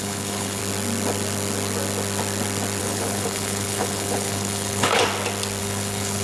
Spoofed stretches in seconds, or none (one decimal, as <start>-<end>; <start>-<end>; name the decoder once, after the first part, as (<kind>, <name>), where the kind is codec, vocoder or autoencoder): 0.0-0.6 (codec, HILCodec); 2.8-5.0; 5.6-6.2